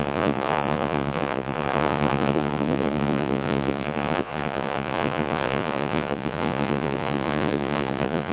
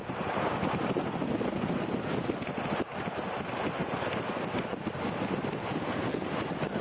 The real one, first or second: second